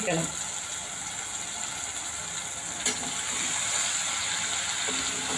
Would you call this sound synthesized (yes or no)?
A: no